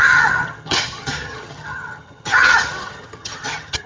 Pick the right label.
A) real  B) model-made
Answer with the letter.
B